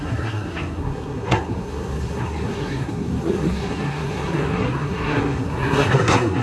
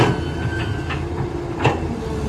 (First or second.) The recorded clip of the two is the second